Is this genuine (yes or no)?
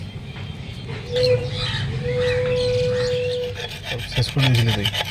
yes